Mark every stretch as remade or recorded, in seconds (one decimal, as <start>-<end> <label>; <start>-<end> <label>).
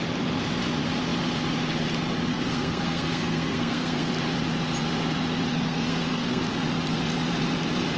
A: 0.0-2.3 recorded; 2.3-4.1 remade; 4.1-5.5 recorded; 5.5-6.4 remade; 6.4-8.0 recorded